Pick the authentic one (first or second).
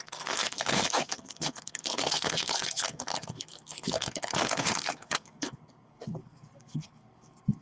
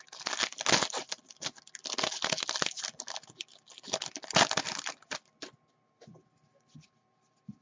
second